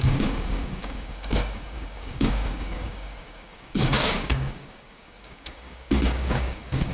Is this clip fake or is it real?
fake